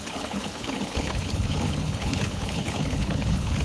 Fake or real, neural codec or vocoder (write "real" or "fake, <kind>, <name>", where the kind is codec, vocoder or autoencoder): fake, codec, HILCodec